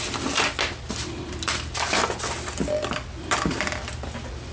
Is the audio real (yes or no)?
yes